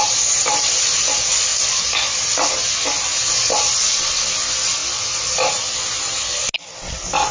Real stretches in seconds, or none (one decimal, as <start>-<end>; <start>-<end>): 0.0-7.3